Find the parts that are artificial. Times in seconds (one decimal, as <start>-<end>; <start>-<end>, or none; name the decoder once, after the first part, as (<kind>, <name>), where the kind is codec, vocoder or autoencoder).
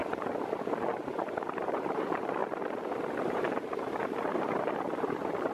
1.5-2.4 (vocoder, BigVGAN v2); 3.1-5.5